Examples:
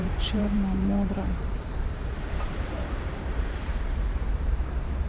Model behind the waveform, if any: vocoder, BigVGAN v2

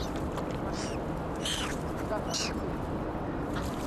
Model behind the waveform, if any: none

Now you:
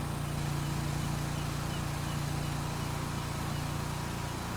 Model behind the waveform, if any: none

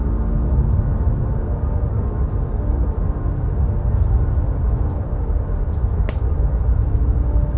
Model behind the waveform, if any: none